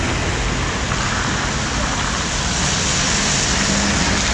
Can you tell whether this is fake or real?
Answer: real